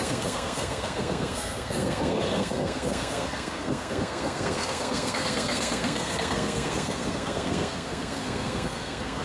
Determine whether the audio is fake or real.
fake